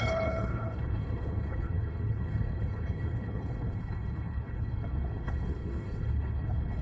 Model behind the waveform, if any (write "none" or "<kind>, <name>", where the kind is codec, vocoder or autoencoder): codec, HILCodec